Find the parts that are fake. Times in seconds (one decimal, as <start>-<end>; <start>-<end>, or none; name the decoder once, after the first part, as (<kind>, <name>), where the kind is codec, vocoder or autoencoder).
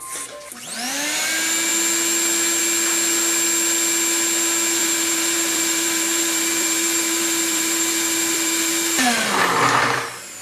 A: 4.8-9.4 (vocoder, BigVGAN v2)